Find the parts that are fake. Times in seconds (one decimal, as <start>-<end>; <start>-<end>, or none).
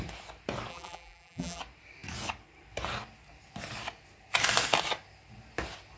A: 0.7-1.6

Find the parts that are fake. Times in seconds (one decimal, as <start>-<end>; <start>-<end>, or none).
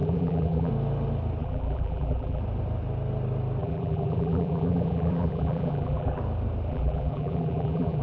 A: 0.0-0.7; 1.4-2.4; 3.6-6.2; 6.7-8.0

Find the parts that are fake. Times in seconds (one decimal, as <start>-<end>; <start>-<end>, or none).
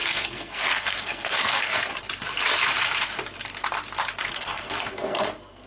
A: 0.0-1.9; 4.3-5.7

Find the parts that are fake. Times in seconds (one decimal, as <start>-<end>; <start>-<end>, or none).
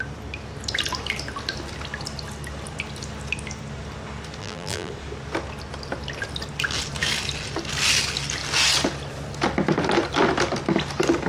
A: 4.4-4.9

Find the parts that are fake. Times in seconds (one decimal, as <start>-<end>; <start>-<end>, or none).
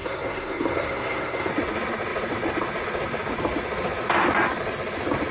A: 0.0-1.5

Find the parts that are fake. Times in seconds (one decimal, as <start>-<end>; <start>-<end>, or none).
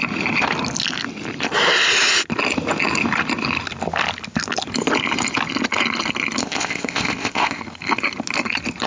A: 6.4-7.6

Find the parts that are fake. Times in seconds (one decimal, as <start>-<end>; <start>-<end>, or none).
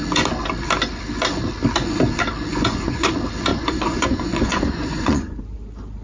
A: 2.5-3.1; 3.5-5.4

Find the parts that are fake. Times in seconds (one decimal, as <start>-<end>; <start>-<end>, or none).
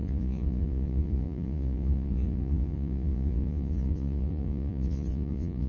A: 0.0-5.7